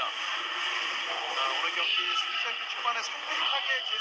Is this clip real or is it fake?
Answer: real